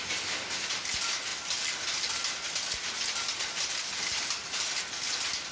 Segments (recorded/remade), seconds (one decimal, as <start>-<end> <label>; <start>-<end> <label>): 0.0-5.5 recorded

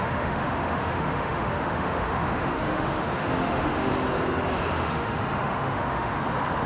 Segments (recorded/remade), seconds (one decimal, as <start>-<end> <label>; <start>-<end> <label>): 0.0-3.9 remade; 3.9-4.7 recorded; 4.7-6.1 remade; 6.1-6.7 recorded

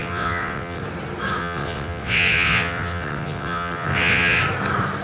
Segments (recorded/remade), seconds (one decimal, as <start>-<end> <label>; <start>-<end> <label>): 0.0-0.8 remade; 0.8-1.4 recorded; 1.4-4.4 remade; 4.4-5.0 recorded

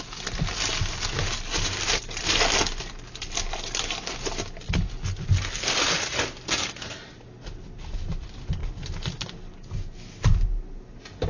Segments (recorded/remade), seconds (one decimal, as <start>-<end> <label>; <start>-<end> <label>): 0.0-11.3 recorded

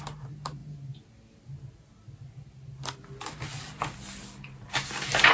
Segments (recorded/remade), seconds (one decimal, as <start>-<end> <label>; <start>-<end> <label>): 0.0-5.3 recorded

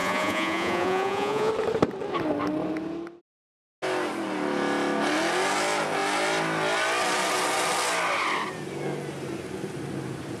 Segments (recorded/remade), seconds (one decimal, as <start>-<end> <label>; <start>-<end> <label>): 0.0-1.5 remade; 1.5-10.4 recorded